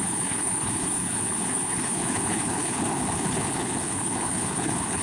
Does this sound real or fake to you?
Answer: fake